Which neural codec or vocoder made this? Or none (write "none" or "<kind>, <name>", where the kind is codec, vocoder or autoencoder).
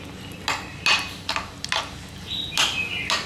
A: none